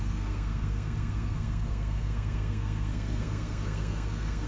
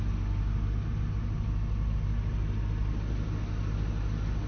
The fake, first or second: first